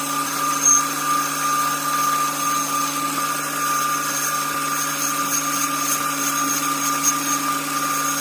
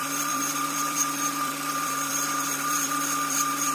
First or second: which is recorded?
first